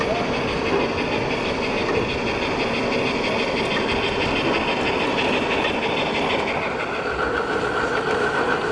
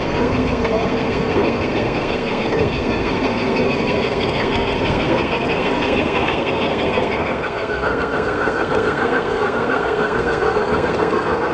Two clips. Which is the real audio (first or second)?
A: first